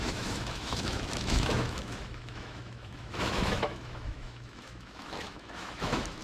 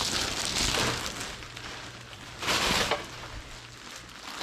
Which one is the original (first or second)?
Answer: second